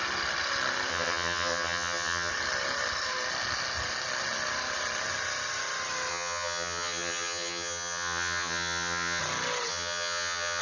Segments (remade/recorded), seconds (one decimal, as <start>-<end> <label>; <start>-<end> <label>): 0.0-0.9 recorded; 0.9-2.3 remade; 2.3-6.1 recorded; 6.1-9.2 remade; 9.2-9.7 recorded; 9.7-10.6 remade